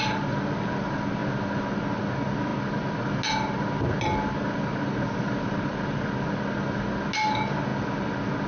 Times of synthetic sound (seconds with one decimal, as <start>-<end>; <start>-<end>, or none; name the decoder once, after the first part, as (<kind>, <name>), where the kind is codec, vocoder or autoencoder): none